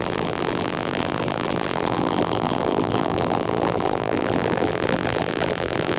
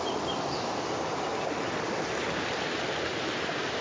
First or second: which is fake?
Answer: first